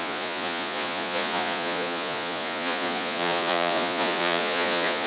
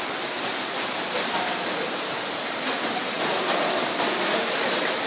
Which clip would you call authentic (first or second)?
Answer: second